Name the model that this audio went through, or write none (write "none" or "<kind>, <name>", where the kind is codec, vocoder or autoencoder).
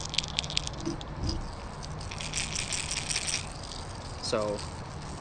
none